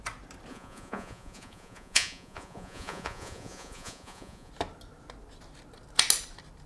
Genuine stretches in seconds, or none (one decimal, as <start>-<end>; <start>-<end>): 0.0-0.5; 4.5-6.7